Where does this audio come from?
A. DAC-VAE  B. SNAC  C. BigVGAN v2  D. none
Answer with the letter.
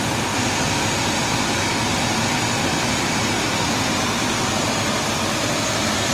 D